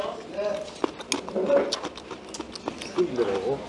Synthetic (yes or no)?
no